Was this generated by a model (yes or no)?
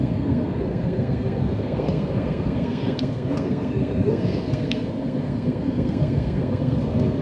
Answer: yes